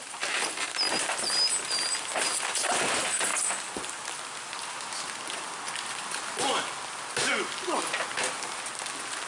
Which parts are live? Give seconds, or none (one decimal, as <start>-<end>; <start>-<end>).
0.0-9.3

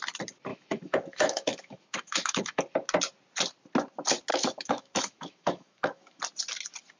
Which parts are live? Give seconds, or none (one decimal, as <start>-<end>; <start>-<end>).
0.0-0.5; 2.6-4.3; 6.2-7.0

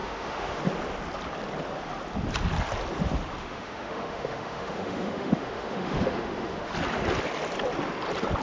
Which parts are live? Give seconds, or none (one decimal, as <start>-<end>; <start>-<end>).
0.6-3.4; 6.7-8.4

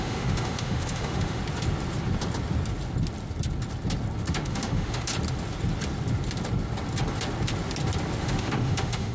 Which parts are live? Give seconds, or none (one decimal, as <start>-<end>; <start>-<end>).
1.4-4.3; 5.1-8.2

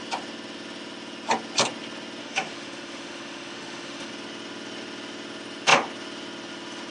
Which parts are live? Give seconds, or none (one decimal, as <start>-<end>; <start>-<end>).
0.0-2.2; 4.1-6.9

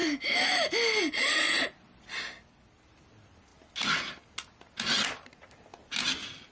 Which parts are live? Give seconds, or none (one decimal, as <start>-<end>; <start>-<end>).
1.0-6.5